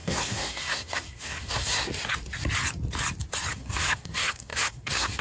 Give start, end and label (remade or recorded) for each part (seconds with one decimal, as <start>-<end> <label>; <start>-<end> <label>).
0.0-1.9 remade; 1.9-3.5 recorded; 3.5-5.2 remade